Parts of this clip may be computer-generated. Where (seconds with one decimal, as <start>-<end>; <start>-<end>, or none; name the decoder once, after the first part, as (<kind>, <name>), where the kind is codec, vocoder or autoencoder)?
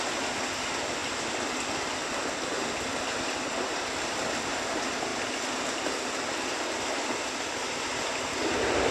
none